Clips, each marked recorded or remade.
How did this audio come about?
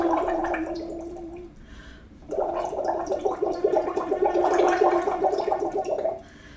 remade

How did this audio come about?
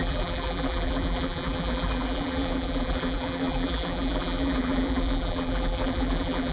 remade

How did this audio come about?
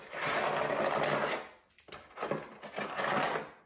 recorded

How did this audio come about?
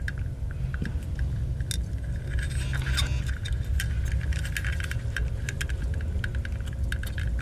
recorded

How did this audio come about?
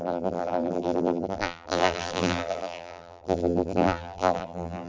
remade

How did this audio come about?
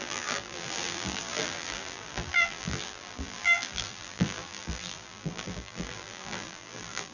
remade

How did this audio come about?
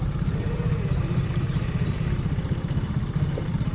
remade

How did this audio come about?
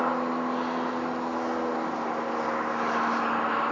recorded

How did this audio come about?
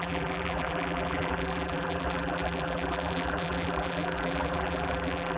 remade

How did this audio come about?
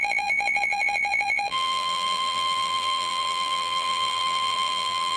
remade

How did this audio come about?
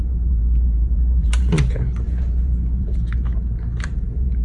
remade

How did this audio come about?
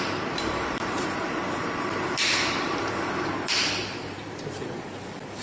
remade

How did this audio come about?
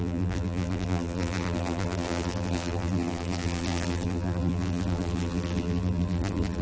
remade